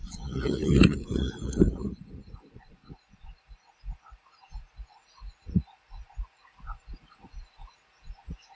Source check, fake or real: fake